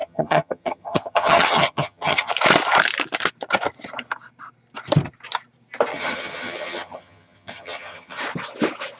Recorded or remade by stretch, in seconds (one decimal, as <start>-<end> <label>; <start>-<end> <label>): 0.0-2.3 remade; 2.3-5.9 recorded; 5.9-8.2 remade; 8.2-9.0 recorded